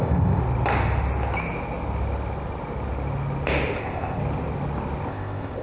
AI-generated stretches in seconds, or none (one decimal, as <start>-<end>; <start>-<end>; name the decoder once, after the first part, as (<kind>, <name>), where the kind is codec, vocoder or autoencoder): 0.0-0.4 (codec, ZipCodec); 3.8-4.2; 5.1-5.6